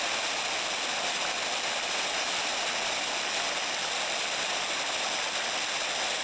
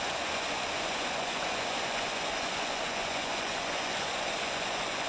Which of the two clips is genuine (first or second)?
first